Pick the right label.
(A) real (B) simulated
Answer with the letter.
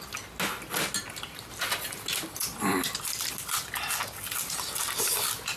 A